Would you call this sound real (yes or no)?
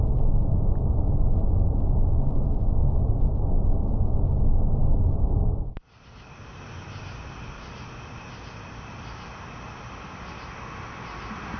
yes